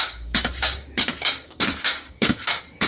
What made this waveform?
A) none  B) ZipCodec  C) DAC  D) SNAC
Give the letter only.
C